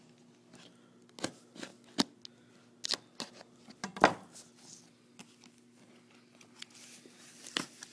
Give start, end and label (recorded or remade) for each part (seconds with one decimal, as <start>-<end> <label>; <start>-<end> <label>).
0.0-7.9 recorded